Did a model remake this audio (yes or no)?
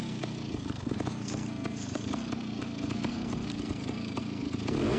yes